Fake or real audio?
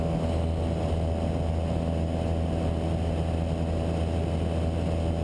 real